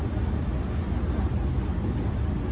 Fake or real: real